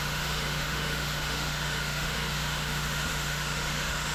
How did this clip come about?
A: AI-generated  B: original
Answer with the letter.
A